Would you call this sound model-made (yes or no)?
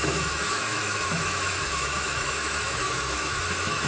yes